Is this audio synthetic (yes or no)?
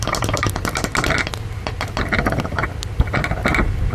no